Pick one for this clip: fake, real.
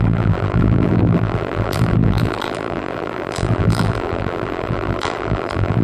fake